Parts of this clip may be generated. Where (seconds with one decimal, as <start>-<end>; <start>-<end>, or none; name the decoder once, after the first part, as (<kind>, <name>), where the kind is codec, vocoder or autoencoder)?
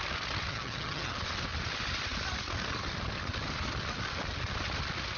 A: 0.5-1.1 (vocoder, HiFi-GAN)